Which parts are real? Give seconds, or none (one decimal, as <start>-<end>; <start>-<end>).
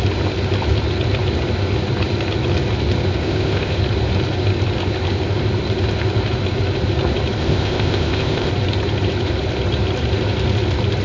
0.0-3.2; 3.8-7.4; 8.5-11.0